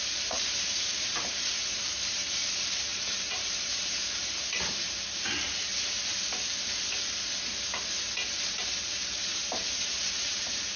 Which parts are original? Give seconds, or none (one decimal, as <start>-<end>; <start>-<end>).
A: 5.7-8.6; 9.3-9.8